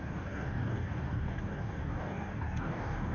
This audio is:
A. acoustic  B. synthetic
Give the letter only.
B